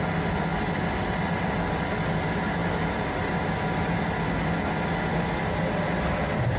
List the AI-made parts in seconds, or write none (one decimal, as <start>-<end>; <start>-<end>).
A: none